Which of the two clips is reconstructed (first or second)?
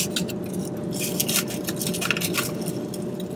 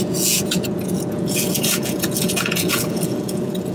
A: second